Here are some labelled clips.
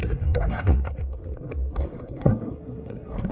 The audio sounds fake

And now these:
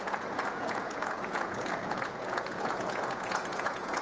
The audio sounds fake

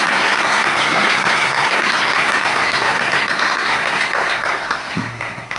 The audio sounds fake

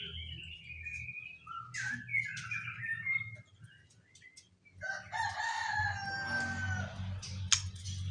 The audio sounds real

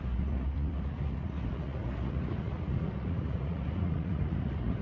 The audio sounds fake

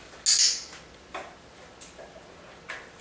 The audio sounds real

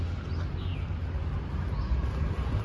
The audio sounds real